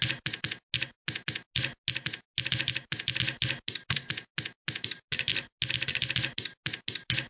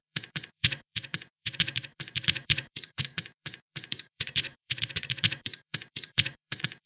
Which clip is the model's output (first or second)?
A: second